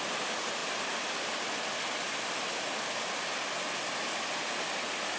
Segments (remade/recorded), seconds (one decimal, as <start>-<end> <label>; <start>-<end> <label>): 0.0-5.2 recorded